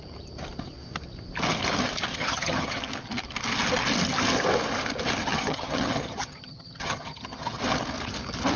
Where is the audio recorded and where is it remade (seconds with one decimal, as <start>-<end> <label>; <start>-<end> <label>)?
0.0-2.1 recorded; 2.1-2.8 remade; 2.8-5.2 recorded; 5.2-7.6 remade; 7.6-8.6 recorded

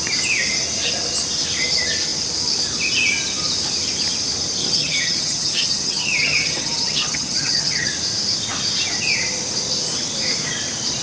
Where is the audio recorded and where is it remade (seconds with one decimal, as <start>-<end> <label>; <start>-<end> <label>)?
0.0-4.6 recorded; 4.6-7.9 remade; 7.9-11.0 recorded

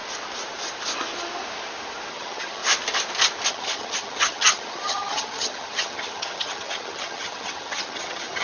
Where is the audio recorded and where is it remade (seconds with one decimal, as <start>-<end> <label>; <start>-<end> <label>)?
0.0-2.1 recorded; 2.1-2.6 remade; 2.6-3.5 recorded; 3.5-8.4 remade